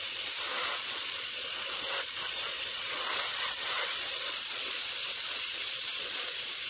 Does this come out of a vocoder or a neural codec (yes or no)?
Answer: yes